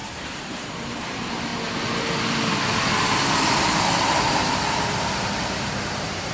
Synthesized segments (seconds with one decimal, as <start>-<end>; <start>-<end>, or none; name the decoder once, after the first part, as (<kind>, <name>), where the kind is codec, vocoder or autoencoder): 0.0-1.5 (vocoder, BigVGAN v2); 4.2-6.3